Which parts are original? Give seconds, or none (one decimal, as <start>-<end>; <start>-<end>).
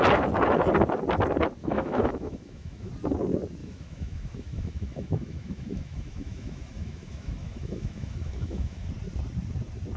0.0-1.6; 2.9-3.6; 8.9-10.0